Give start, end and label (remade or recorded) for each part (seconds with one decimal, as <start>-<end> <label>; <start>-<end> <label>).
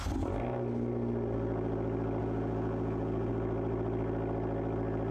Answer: 0.0-2.2 recorded; 2.2-3.3 remade; 3.3-5.1 recorded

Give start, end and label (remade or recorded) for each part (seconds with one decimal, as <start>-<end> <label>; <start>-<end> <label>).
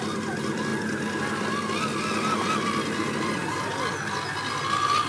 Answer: 0.0-5.1 recorded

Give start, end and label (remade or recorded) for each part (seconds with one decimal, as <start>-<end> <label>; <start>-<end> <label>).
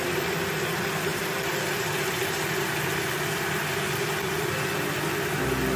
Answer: 0.0-5.8 recorded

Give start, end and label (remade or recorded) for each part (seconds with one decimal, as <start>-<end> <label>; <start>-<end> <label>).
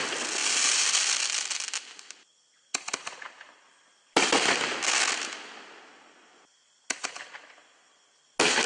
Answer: 0.0-0.4 recorded; 0.4-1.8 remade; 1.8-8.7 recorded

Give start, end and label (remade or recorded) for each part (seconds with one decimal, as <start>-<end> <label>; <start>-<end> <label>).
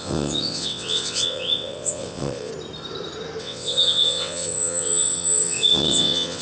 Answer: 0.0-2.5 remade; 2.5-3.4 recorded; 3.4-6.4 remade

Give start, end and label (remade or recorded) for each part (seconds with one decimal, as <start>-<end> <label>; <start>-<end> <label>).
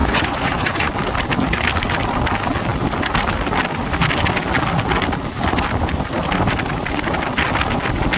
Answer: 0.0-0.9 remade; 0.9-8.2 recorded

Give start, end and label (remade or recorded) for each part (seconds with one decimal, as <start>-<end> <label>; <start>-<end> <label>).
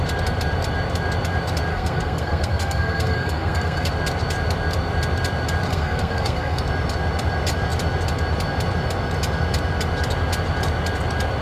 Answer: 0.0-1.7 recorded; 1.7-3.9 remade; 3.9-5.7 recorded; 5.7-6.6 remade; 6.6-11.4 recorded